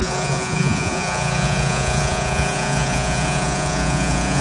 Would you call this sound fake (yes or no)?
yes